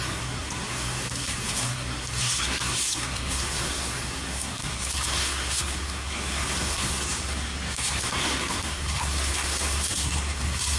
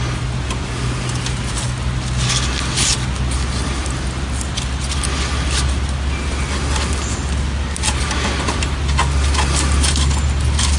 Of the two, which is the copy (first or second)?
first